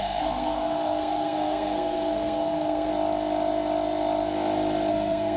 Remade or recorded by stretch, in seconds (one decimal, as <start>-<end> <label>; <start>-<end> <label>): 0.0-2.9 remade; 2.9-4.9 recorded; 4.9-5.4 remade